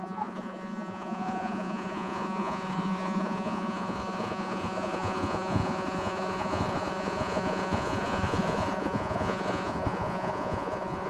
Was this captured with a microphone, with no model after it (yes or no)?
no